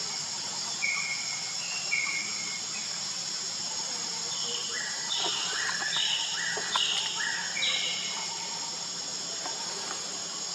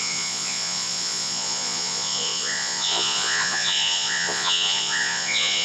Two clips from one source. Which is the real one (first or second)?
first